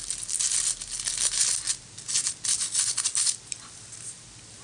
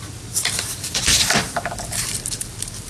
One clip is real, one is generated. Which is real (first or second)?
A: first